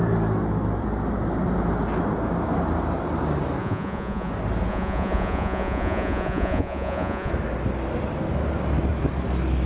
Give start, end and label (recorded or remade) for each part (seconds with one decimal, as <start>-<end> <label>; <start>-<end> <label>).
0.0-3.6 recorded; 3.6-4.3 remade; 4.3-4.7 recorded; 4.7-7.3 remade; 7.3-9.7 recorded

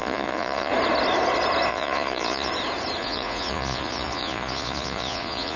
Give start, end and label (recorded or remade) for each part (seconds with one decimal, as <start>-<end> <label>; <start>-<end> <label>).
0.0-0.7 remade; 0.7-1.7 recorded; 1.7-2.5 remade; 2.5-3.0 recorded; 3.0-5.6 remade